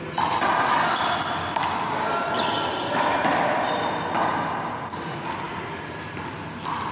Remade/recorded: recorded